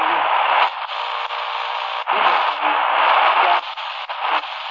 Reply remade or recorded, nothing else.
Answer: recorded